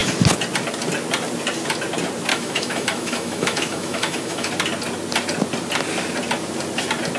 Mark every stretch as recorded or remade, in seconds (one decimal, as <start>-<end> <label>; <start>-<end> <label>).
0.0-2.3 recorded; 2.3-4.5 remade; 4.5-7.2 recorded